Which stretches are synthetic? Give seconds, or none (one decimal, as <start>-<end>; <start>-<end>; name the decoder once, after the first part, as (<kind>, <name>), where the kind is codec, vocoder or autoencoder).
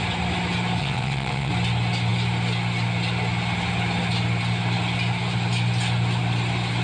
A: 0.8-1.5 (vocoder, WaveNeXt)